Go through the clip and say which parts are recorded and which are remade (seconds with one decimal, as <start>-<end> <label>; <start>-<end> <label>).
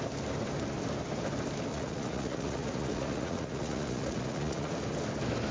0.0-1.7 recorded; 1.7-4.7 remade; 4.7-5.5 recorded